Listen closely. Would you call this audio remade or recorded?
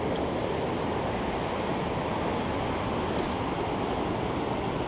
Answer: recorded